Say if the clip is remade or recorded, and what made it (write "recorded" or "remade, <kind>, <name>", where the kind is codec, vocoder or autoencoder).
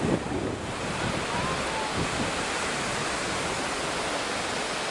recorded